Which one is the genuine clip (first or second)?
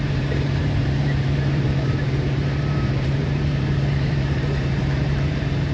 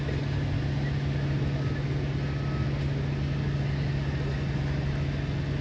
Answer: second